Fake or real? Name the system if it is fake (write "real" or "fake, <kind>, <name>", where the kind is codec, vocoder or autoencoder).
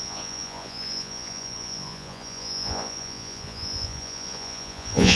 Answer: fake, vocoder, Vocos